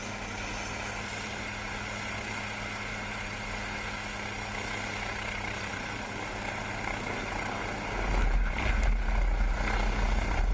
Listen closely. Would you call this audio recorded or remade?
recorded